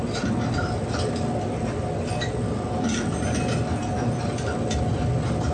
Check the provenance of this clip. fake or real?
real